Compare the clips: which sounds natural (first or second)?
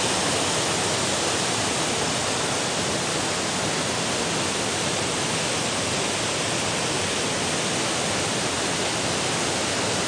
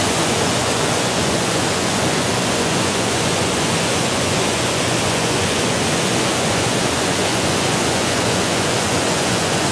first